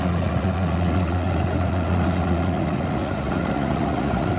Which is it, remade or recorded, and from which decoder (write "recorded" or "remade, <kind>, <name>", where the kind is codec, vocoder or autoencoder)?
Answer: remade, vocoder, Vocos